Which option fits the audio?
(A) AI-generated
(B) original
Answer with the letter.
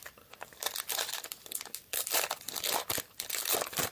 B